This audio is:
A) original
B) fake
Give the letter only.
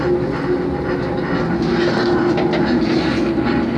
A